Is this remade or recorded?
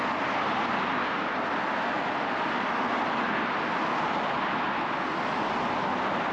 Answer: recorded